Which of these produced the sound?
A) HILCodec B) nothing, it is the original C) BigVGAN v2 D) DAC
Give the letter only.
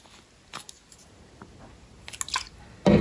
B